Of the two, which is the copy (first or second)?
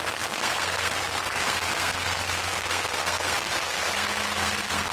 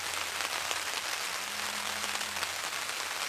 first